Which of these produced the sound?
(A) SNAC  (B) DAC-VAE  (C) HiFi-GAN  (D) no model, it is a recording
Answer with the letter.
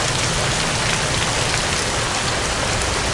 D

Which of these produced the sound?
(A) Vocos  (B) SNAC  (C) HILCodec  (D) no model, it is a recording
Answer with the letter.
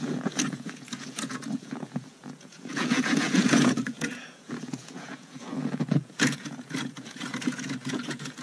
A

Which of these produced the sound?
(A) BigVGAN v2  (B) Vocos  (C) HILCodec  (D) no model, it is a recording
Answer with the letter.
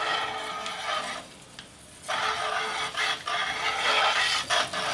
D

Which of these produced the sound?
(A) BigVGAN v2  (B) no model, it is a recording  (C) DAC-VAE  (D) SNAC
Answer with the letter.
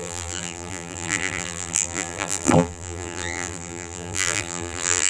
A